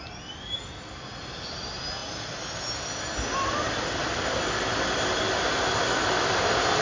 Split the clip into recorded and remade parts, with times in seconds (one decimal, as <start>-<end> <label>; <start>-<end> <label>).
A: 0.0-2.0 remade; 2.0-4.0 recorded; 4.0-6.8 remade